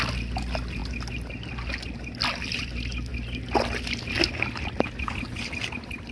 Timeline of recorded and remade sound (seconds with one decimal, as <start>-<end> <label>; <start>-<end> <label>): 0.0-6.1 recorded